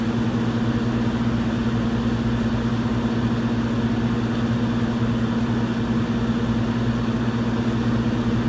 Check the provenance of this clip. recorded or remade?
recorded